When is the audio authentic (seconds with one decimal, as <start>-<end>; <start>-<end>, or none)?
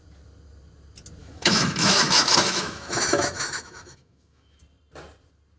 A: 0.0-1.2; 4.6-5.6